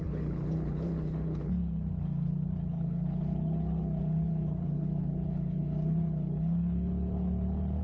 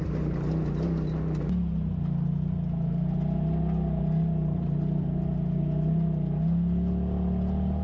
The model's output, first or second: first